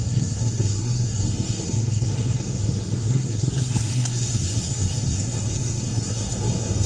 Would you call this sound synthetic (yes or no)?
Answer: yes